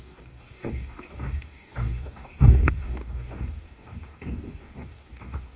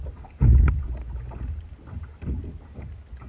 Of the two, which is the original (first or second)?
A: second